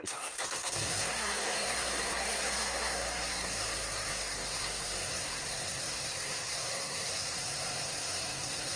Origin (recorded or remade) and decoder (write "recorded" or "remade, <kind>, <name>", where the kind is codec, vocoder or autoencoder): remade, codec, SNAC